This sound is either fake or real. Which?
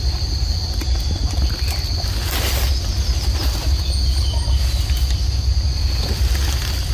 real